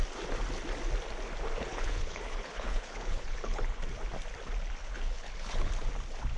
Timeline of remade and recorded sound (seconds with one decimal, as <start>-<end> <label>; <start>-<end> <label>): 0.0-1.7 recorded; 1.7-3.8 remade; 3.8-4.8 recorded; 4.8-5.7 remade; 5.7-6.4 recorded